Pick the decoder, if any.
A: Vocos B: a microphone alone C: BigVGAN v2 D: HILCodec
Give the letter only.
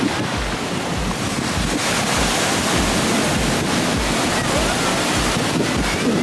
B